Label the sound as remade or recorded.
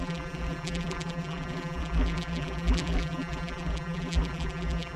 remade